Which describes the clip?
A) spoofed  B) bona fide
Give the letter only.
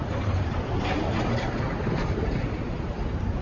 A